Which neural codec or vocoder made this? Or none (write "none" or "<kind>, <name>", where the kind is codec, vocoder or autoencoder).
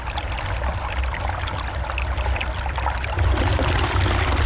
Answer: none